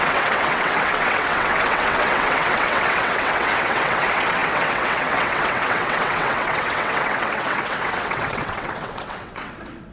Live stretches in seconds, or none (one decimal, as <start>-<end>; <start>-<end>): none